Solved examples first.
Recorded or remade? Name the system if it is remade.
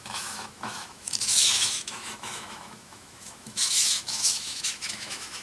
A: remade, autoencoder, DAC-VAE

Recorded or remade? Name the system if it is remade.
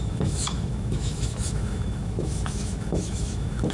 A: remade, autoencoder, DAC-VAE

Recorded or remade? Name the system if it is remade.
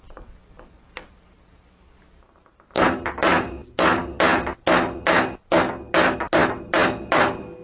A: recorded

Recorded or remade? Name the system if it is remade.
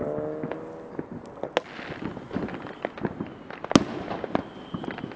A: recorded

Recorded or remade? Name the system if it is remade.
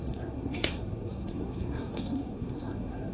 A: remade, codec, SNAC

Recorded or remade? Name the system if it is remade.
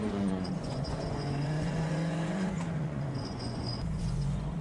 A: remade, vocoder, Vocos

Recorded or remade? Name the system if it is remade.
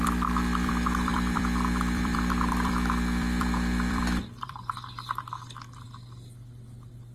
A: remade, vocoder, BigVGAN v2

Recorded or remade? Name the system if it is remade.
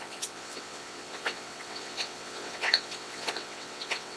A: remade, vocoder, WaveNeXt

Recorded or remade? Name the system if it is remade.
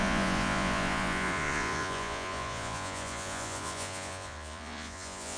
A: remade, vocoder, Vocos